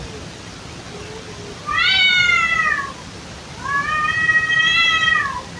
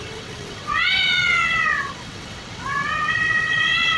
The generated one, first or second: second